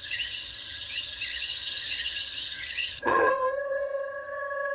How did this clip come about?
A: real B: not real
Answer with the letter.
B